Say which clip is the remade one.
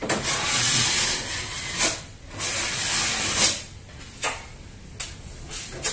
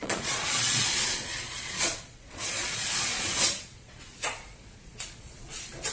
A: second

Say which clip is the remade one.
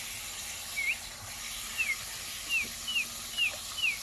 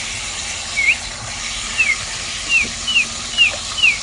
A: second